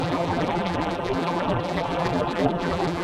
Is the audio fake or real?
fake